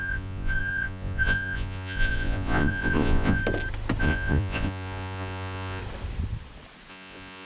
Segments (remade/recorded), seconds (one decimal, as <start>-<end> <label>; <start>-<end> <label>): 0.0-3.4 remade; 3.4-4.0 recorded; 4.0-5.8 remade; 5.8-6.9 recorded; 6.9-7.4 remade